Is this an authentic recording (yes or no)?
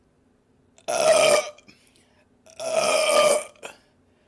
yes